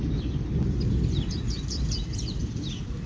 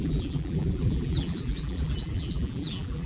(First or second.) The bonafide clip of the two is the first